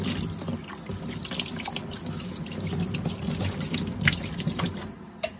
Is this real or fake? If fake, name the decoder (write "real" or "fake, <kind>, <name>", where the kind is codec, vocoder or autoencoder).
real